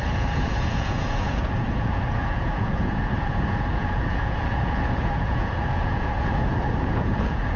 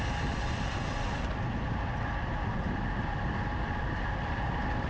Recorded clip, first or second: second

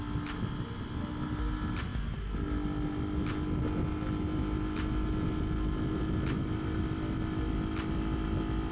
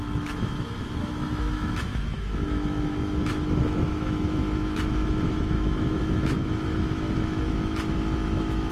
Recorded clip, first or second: first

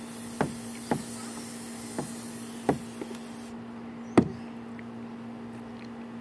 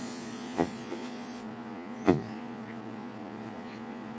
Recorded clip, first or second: first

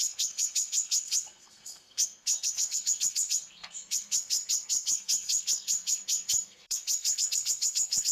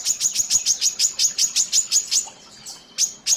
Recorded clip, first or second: second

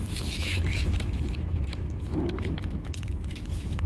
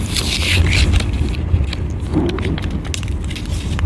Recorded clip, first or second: second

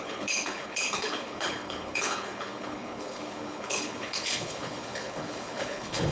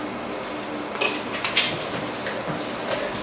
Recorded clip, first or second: second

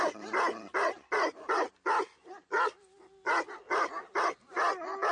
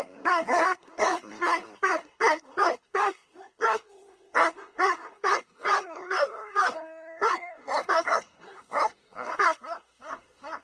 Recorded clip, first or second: first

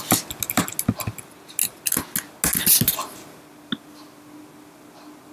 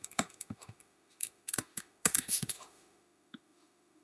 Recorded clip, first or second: first